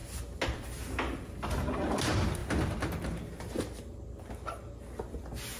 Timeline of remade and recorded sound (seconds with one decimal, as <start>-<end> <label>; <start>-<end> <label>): 0.0-5.6 recorded